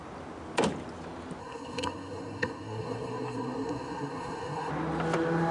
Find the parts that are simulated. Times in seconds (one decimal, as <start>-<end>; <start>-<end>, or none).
1.4-4.7